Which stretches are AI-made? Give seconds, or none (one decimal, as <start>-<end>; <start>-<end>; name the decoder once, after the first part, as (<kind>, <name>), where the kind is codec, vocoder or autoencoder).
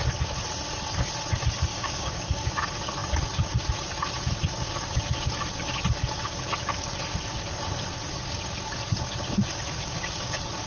1.7-2.5 (codec, DAC)